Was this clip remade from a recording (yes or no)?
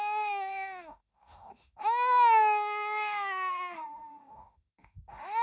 yes